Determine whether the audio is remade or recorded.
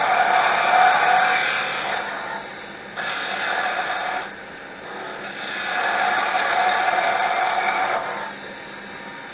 recorded